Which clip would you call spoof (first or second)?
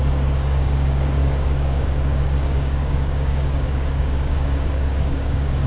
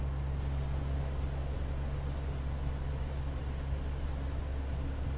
first